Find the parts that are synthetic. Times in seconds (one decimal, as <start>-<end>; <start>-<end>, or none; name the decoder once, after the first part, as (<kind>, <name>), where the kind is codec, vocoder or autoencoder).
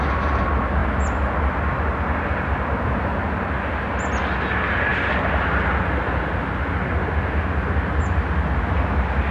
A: none